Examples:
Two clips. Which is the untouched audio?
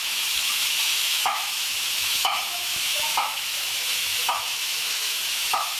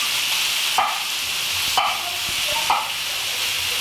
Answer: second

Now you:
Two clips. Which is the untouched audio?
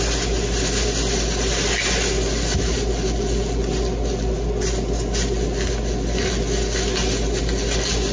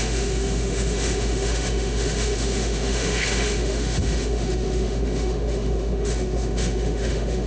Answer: first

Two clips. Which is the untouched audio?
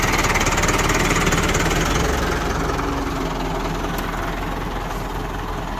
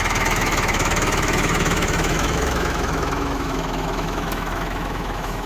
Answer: first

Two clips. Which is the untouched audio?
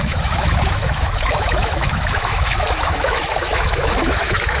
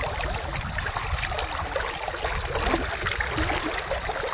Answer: second